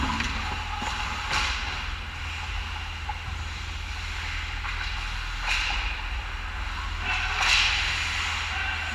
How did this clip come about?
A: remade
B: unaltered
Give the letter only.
B